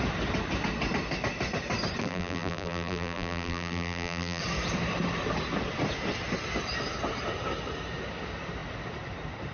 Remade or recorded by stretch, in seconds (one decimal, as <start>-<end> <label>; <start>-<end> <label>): 0.0-2.0 recorded; 2.0-4.4 remade; 4.4-9.5 recorded

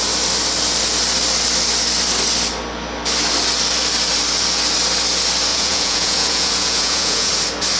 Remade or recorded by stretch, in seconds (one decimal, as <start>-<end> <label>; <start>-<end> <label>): 0.0-5.5 recorded; 5.5-7.3 remade; 7.3-7.8 recorded

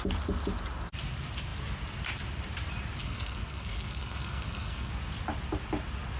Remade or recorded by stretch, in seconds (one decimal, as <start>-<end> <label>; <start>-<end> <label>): 0.0-3.0 recorded; 3.0-4.9 remade; 4.9-6.2 recorded

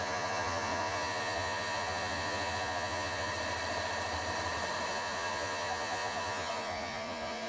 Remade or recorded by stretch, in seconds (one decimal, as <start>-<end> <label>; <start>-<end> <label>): 0.0-3.3 remade; 3.3-4.9 recorded; 4.9-7.5 remade

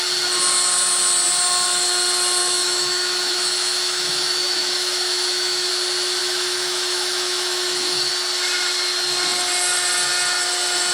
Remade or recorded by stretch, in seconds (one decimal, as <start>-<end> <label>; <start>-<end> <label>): 0.0-2.4 recorded; 2.4-5.7 remade; 5.7-6.2 recorded; 6.2-8.1 remade; 8.1-10.9 recorded